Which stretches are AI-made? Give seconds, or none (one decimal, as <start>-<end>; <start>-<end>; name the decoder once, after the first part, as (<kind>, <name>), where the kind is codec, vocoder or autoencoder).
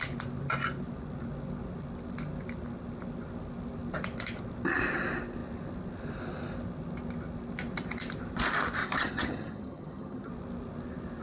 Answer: 8.8-10.3 (vocoder, HiFi-GAN)